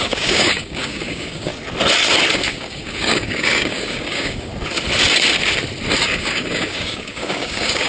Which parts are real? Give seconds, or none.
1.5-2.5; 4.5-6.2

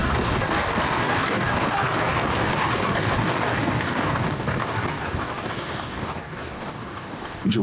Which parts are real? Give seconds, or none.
none

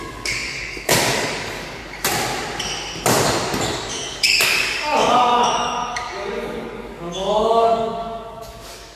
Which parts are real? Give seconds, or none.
1.8-3.7

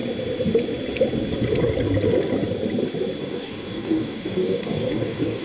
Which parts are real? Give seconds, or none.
0.0-3.2

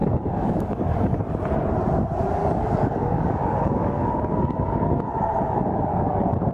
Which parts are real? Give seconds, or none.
1.2-2.4

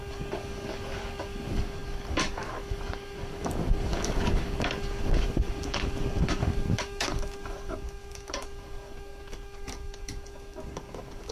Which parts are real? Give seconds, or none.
none

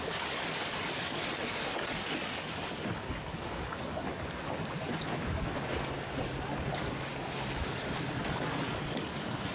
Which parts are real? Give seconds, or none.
4.1-6.6; 7.1-8.7

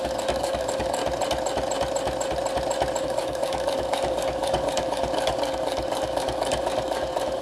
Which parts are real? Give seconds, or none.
1.0-3.0